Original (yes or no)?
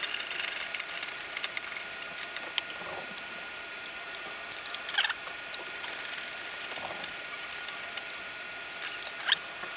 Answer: no